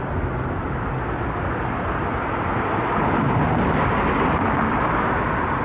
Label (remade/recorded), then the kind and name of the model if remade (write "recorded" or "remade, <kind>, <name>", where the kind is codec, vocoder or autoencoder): recorded